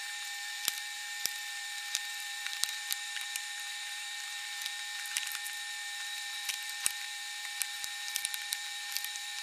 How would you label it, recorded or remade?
remade